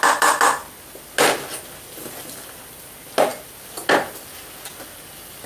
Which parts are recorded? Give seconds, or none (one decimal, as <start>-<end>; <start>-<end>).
0.0-5.5